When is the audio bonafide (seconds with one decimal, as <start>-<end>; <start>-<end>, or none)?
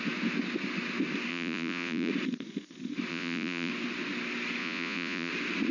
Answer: 0.0-1.3; 2.1-3.1; 3.7-4.6; 5.3-5.7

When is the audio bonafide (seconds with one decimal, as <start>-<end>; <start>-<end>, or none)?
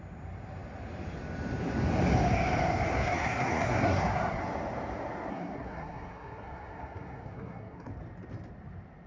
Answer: 0.0-2.9; 4.4-5.3; 7.9-9.1